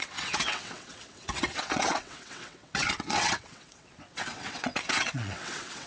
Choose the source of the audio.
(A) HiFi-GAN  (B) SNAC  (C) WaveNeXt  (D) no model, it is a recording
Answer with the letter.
C